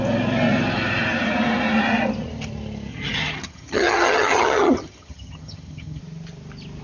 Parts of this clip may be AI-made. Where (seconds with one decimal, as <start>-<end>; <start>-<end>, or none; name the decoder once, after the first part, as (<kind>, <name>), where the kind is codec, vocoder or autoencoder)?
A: 2.9-6.0 (vocoder, HiFi-GAN)